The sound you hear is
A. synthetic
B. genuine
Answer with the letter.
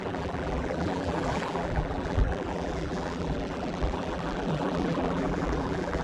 A